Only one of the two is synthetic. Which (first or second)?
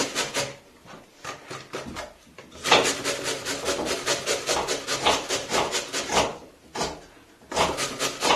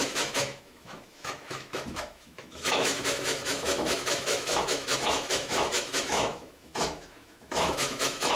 second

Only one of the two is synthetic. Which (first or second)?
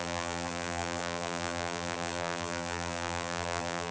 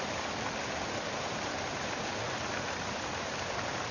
first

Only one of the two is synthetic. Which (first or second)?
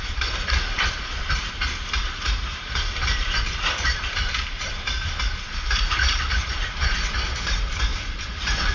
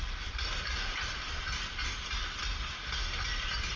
first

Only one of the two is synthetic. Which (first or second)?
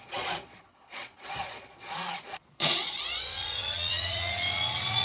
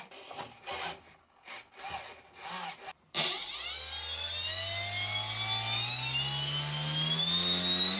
first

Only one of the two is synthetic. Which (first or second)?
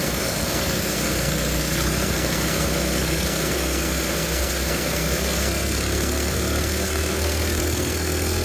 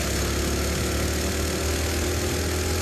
first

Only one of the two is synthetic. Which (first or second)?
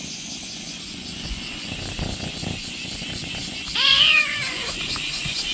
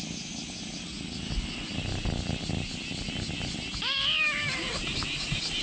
first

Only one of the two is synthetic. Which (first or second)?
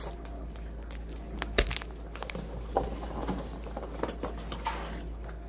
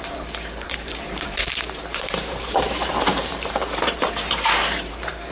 second